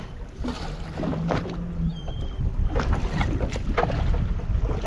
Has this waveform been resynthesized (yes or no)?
no